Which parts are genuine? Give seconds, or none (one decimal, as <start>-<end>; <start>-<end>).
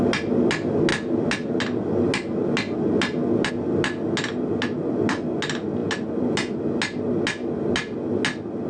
0.0-8.7